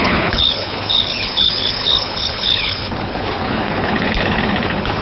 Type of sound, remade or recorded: remade